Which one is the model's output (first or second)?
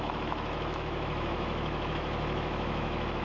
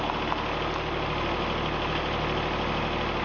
first